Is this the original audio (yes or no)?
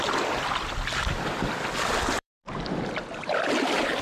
no